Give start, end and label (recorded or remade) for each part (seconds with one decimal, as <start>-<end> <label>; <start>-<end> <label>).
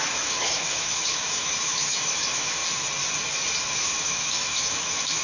0.0-2.6 remade; 2.6-3.7 recorded; 3.7-5.2 remade